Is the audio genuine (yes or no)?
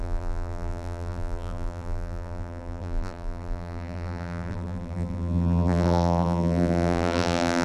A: no